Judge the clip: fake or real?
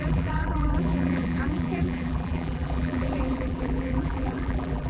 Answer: fake